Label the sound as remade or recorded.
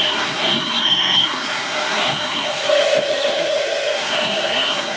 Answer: remade